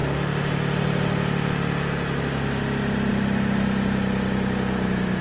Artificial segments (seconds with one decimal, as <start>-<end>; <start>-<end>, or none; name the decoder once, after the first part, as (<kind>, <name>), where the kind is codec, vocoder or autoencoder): none